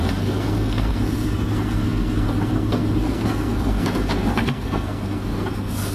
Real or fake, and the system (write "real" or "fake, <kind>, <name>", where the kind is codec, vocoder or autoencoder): fake, codec, SNAC